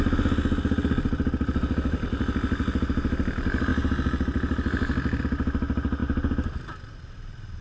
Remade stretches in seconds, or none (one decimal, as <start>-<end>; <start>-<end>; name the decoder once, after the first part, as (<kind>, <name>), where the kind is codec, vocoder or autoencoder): none

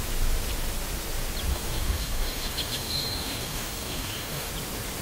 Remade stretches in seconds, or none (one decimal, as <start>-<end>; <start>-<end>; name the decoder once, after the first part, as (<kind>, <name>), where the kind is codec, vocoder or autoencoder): 1.5-4.5 (codec, DAC)

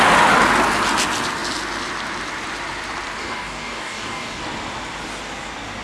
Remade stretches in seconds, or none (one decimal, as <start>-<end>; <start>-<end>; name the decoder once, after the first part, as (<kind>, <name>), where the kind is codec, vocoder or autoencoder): 3.2-4.4 (codec, DAC)

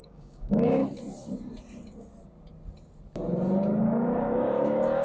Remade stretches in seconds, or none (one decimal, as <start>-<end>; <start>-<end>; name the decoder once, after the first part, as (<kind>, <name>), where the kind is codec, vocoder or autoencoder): 0.0-0.8 (codec, DAC); 3.8-5.0

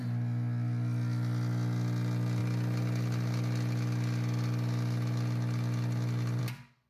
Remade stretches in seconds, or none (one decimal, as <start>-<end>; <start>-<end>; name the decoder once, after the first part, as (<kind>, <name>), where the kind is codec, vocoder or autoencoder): none

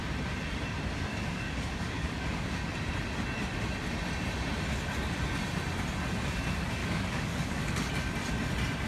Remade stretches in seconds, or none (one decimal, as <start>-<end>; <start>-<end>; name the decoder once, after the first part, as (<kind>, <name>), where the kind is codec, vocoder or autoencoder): 1.1-2.7 (codec, DAC); 6.8-7.9

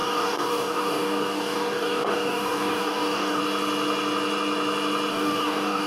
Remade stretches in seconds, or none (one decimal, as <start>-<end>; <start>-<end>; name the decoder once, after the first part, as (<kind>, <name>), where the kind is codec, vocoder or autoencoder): 0.0-3.4 (codec, DAC); 5.1-5.9